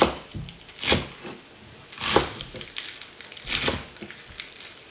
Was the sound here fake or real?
real